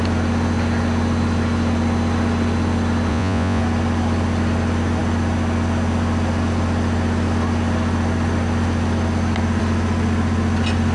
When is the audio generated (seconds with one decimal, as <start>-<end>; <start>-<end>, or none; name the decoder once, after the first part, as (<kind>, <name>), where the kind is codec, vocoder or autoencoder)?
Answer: 3.1-3.6 (vocoder, Vocos)